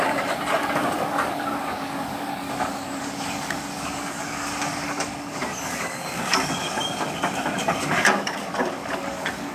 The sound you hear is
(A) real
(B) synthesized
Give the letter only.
B